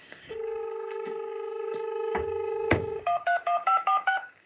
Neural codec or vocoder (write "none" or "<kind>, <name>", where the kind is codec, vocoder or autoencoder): codec, DAC